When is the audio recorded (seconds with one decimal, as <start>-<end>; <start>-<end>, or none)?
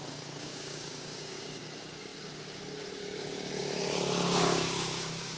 none